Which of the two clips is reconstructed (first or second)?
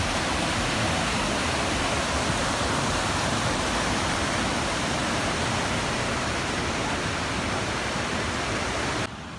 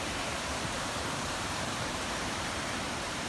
second